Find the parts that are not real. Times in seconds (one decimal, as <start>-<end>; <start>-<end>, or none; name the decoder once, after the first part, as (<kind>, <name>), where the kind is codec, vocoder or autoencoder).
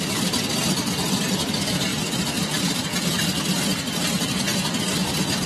none